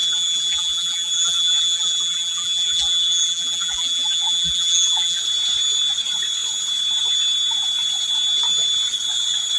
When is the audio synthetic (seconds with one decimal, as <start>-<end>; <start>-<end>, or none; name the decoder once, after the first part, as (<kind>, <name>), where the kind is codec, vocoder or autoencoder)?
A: 0.0-5.2 (vocoder, BigVGAN v2)